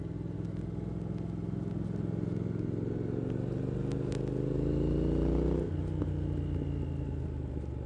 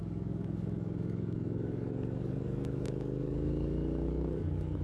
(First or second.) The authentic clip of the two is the first